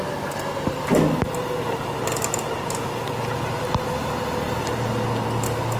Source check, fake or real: real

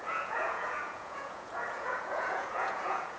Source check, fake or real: fake